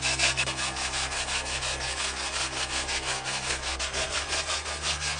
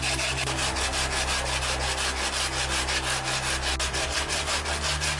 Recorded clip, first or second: second